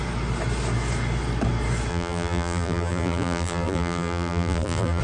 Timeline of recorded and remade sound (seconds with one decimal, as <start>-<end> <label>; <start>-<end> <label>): 0.0-1.9 recorded; 1.9-5.0 remade